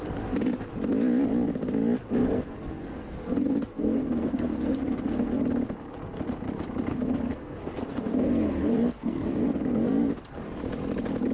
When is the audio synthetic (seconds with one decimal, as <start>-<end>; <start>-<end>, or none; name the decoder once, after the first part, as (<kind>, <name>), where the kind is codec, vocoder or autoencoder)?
2.2-5.4 (codec, SNAC); 6.9-10.4